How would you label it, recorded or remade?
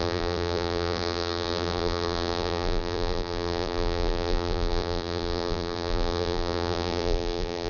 remade